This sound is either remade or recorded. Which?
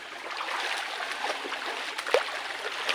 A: recorded